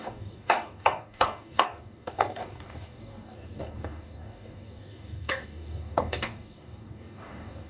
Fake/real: fake